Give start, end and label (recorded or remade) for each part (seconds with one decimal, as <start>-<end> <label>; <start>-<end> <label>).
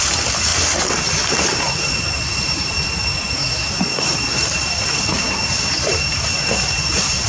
0.0-7.3 recorded